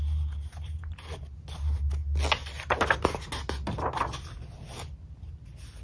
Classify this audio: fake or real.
real